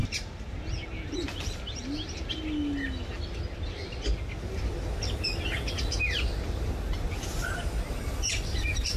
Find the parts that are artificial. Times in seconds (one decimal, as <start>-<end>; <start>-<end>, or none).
0.0-0.6

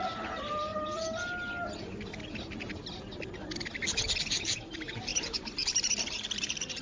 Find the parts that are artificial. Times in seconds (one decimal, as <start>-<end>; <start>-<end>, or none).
0.0-0.7; 4.2-6.8

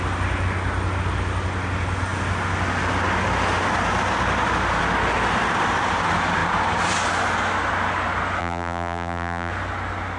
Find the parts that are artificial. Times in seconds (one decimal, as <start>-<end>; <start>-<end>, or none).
8.4-9.5